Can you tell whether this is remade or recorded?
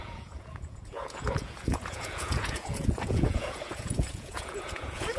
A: remade